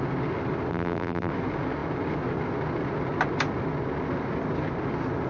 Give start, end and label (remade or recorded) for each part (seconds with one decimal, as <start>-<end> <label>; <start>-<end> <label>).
0.0-0.7 recorded; 0.7-1.3 remade; 1.3-5.3 recorded